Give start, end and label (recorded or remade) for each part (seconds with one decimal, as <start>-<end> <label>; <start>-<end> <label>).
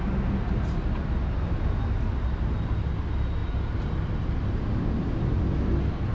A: 0.0-6.1 recorded